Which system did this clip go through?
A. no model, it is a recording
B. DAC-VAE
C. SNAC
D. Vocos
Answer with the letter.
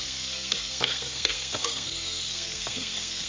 C